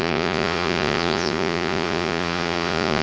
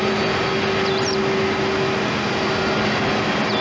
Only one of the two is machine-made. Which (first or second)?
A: first